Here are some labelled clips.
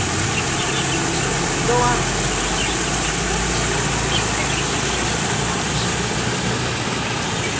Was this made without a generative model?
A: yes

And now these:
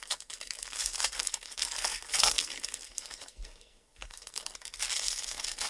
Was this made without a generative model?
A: no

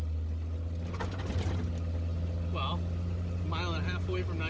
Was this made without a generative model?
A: yes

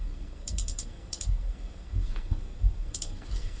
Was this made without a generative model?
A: no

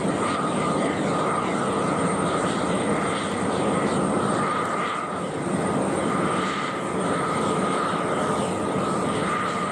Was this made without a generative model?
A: yes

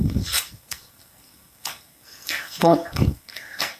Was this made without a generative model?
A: no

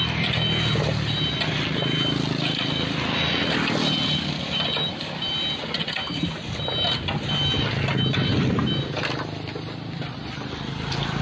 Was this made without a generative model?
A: yes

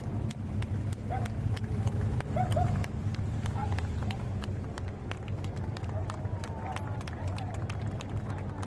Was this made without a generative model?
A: yes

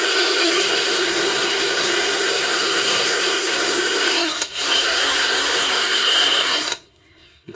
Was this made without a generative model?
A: no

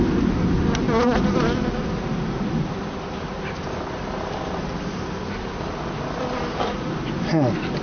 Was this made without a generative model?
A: yes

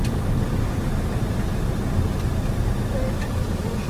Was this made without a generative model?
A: yes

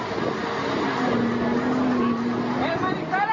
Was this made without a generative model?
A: yes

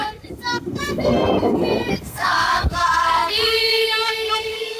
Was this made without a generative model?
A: no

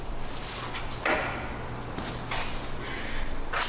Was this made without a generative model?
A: yes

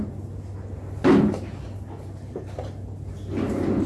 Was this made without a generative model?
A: yes